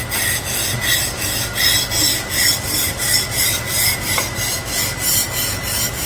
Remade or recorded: recorded